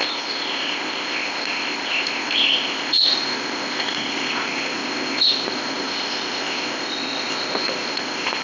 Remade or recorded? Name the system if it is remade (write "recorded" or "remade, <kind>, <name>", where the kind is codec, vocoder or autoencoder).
remade, codec, ZipCodec